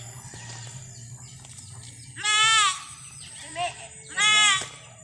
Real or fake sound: real